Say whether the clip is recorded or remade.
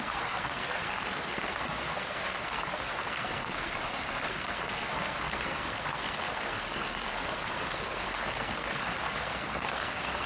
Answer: remade